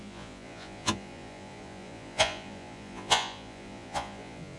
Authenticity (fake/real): fake